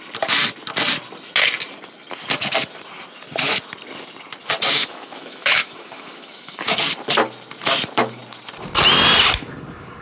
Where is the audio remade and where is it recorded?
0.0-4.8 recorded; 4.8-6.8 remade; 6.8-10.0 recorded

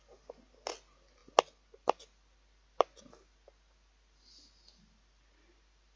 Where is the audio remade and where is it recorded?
0.0-6.0 recorded